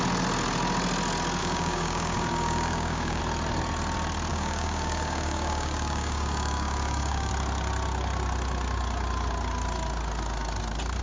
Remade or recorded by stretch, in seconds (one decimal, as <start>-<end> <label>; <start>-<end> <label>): 0.0-1.4 recorded; 1.4-3.2 remade; 3.2-4.3 recorded; 4.3-7.3 remade; 7.3-11.0 recorded